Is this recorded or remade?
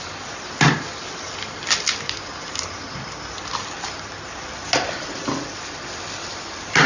recorded